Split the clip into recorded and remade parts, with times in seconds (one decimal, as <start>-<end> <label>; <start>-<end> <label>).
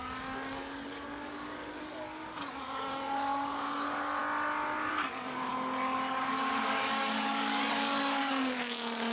0.0-4.2 remade; 4.2-4.9 recorded; 4.9-9.1 remade